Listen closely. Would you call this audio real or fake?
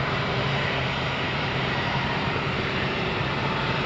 fake